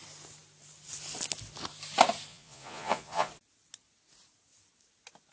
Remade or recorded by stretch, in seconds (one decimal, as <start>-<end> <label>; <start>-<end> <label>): 0.0-2.3 recorded; 2.3-3.3 remade; 3.3-5.3 recorded